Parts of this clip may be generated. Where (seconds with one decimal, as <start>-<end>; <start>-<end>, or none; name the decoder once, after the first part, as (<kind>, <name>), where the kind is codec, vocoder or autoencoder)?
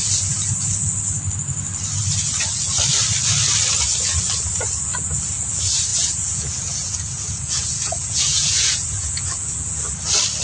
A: 5.9-9.2 (vocoder, Vocos)